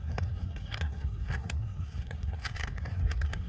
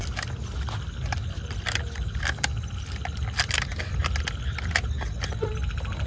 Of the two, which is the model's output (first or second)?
first